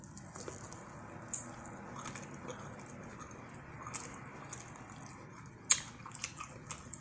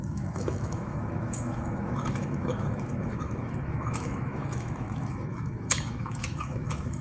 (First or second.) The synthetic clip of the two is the second